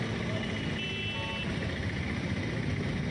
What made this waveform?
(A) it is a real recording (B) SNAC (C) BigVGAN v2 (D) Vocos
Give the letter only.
A